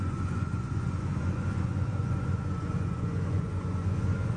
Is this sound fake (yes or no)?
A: yes